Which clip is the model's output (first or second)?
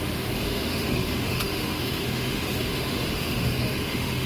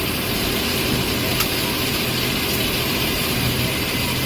first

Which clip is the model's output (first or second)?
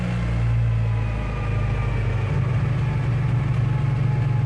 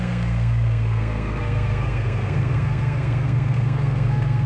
second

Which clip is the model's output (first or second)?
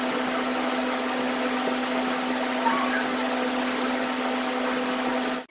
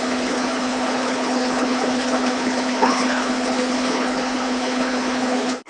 second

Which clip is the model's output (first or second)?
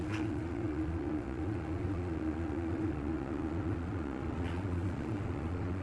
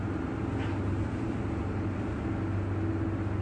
first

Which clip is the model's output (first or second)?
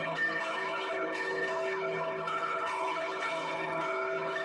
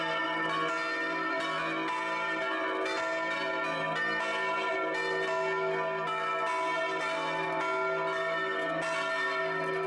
first